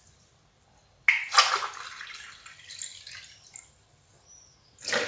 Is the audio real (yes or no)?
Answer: yes